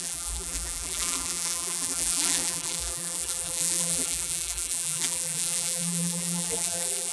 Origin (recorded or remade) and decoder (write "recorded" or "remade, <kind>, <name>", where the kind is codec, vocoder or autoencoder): remade, vocoder, BigVGAN v2